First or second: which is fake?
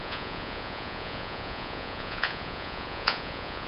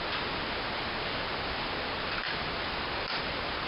first